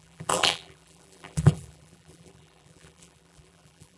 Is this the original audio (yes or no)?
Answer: no